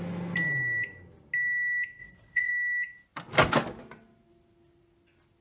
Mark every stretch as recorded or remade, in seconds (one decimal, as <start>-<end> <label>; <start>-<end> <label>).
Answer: 0.0-2.0 recorded; 2.0-2.5 remade; 2.5-5.4 recorded